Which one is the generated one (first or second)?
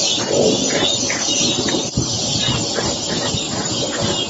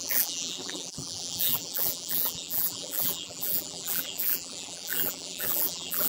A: second